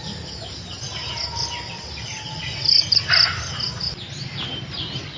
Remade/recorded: recorded